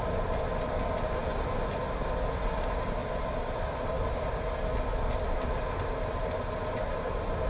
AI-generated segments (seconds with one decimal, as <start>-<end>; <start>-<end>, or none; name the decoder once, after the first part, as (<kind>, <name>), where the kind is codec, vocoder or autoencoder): none